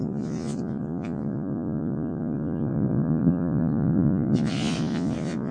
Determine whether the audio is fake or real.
fake